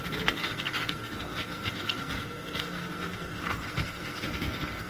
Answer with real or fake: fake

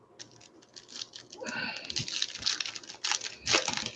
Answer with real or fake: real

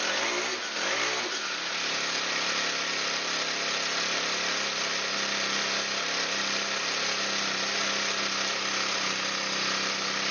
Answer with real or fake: real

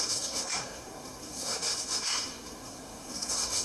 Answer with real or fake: fake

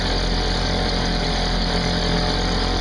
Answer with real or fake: real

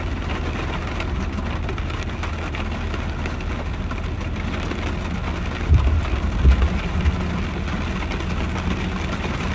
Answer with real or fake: real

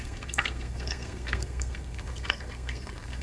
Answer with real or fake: fake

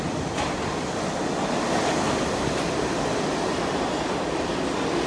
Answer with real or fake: real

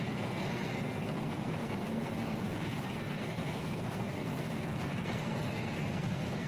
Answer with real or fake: fake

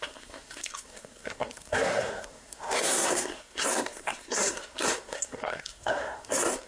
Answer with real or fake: fake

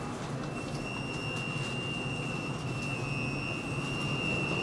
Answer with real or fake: real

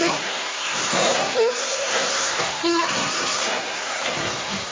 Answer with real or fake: fake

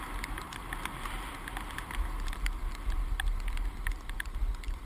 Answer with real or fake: real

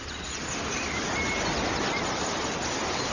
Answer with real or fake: real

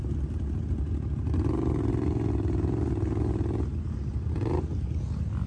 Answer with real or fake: real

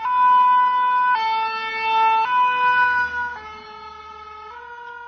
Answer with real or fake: real